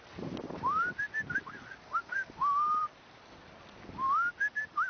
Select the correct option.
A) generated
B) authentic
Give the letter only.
B